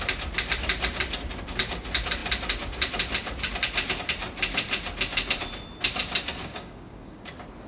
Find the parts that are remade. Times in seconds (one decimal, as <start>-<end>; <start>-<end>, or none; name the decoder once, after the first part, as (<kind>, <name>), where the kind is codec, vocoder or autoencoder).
6.4-7.3 (codec, DAC)